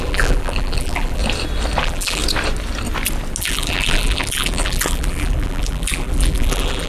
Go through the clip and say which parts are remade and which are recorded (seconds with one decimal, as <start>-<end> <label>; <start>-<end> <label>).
0.0-1.2 remade; 1.2-1.8 recorded; 1.8-2.2 remade; 2.2-3.4 recorded; 3.4-6.9 remade